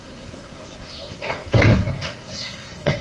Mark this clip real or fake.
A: fake